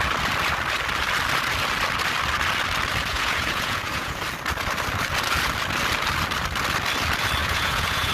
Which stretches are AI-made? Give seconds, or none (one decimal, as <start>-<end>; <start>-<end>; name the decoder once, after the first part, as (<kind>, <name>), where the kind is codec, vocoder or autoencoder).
3.1-4.2 (vocoder, Vocos); 7.4-8.1